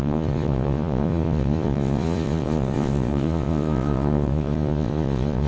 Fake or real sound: fake